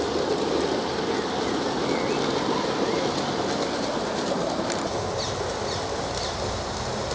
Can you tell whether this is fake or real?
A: real